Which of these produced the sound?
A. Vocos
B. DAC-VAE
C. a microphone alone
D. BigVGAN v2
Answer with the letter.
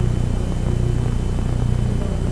C